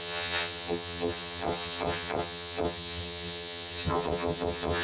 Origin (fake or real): fake